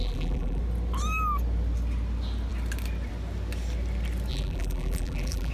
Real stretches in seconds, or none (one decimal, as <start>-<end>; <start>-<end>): 0.6-4.3